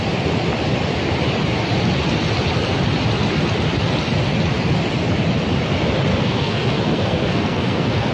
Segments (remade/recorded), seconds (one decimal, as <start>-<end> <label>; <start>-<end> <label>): 0.0-6.1 recorded; 6.1-8.1 remade